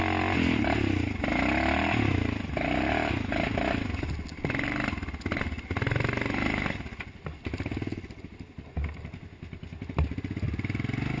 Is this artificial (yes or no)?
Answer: no